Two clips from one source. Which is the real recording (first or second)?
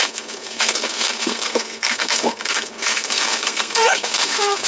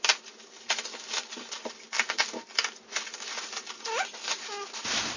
second